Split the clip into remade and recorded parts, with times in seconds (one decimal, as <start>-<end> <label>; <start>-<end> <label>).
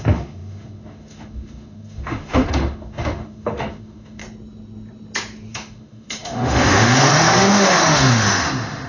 0.0-4.2 remade; 4.2-5.5 recorded; 5.5-8.9 remade